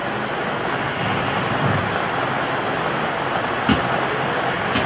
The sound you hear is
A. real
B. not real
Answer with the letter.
A